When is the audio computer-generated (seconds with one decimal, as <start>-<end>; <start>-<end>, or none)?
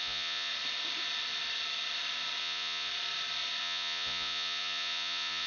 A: 0.0-0.5; 2.4-2.9; 3.6-5.5